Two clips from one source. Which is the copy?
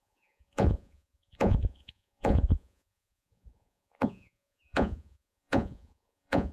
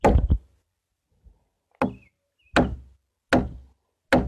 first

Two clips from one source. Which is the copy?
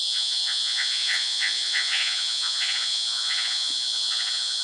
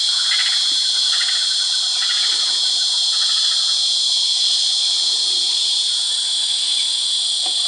first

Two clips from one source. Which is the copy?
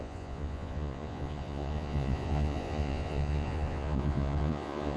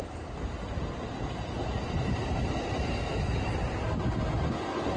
first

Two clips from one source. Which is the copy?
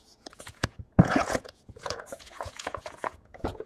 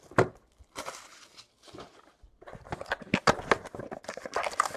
first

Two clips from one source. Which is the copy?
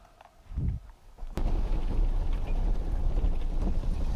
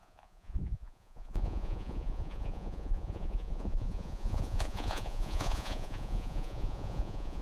second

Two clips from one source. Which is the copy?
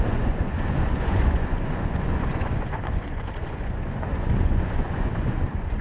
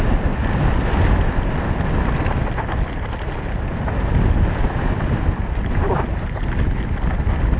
first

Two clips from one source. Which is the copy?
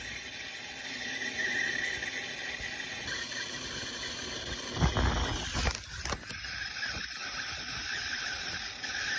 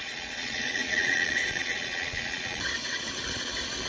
second